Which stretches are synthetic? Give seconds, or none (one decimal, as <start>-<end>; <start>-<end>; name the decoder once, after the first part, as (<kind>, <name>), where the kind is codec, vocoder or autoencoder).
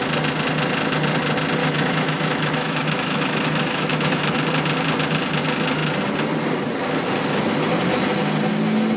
1.6-4.4 (autoencoder, DAC-VAE)